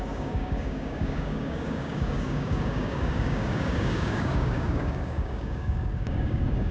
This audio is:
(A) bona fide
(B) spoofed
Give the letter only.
B